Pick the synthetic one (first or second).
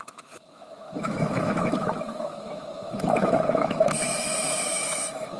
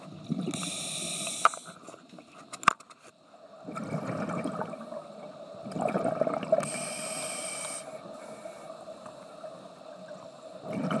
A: first